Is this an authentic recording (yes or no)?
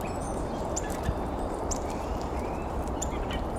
no